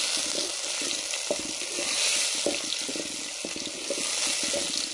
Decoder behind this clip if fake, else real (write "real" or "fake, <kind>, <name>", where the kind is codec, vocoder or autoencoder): real